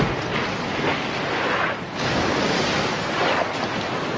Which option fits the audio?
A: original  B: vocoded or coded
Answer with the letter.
A